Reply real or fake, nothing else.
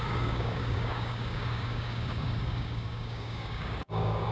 fake